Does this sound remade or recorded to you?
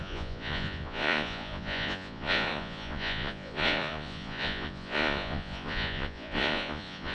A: remade